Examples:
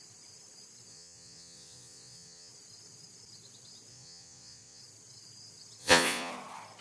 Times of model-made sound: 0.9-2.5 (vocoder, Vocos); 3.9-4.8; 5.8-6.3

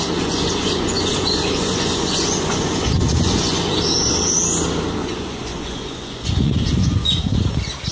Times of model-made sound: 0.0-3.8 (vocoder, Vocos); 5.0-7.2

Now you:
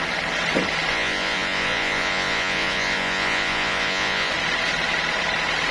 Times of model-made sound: 0.9-4.3 (vocoder, Vocos)

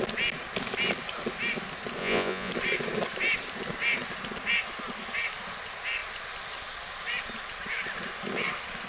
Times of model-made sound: 2.0-2.5 (vocoder, Vocos)

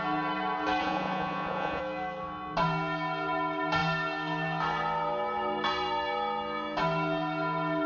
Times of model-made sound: 0.8-1.8 (vocoder, Vocos)